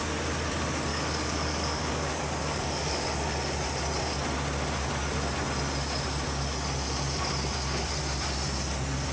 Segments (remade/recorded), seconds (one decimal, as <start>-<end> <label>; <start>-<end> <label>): 0.0-0.9 recorded; 0.9-3.3 remade; 3.3-9.1 recorded